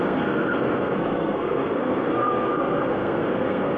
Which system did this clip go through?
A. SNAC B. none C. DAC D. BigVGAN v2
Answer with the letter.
A